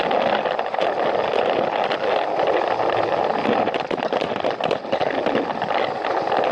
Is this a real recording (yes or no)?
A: yes